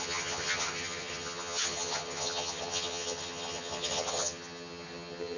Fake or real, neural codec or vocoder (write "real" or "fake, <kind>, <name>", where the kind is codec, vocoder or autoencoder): fake, vocoder, HiFi-GAN